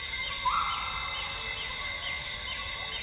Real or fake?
real